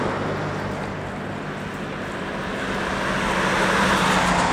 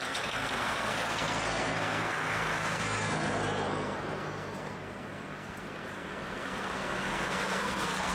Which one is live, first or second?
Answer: first